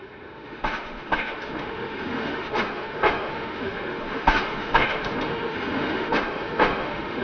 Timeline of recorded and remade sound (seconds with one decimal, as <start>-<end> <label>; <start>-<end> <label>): 0.0-7.2 remade